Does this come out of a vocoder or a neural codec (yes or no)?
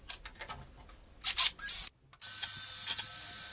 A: no